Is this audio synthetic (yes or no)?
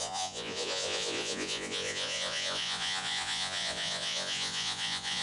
yes